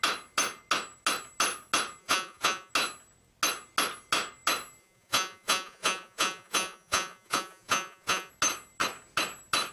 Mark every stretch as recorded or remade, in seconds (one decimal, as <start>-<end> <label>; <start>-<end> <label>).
0.0-2.0 recorded; 2.0-2.7 remade; 2.7-4.8 recorded; 4.8-8.3 remade; 8.3-9.7 recorded